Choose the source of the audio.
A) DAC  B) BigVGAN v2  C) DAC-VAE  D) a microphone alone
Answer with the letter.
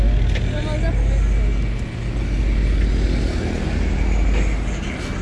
D